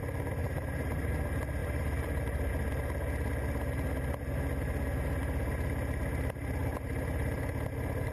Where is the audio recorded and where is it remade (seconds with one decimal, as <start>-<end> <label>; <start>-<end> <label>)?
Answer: 0.0-0.4 recorded; 0.4-1.1 remade; 1.1-1.6 recorded; 1.6-2.5 remade; 2.5-6.6 recorded; 6.6-7.6 remade; 7.6-8.1 recorded